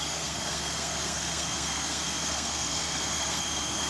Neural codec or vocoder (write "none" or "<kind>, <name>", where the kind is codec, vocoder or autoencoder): codec, SNAC